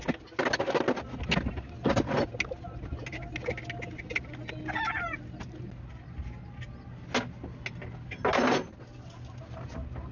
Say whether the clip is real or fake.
real